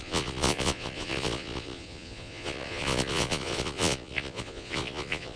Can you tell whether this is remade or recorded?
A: remade